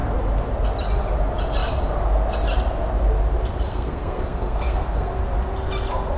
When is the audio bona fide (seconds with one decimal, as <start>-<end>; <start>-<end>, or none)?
0.0-3.7; 5.2-6.2